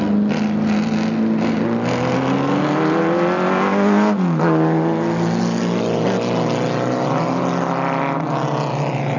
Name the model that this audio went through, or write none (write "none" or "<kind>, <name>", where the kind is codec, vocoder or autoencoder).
none